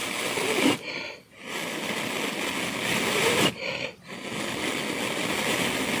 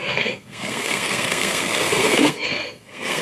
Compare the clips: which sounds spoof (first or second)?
second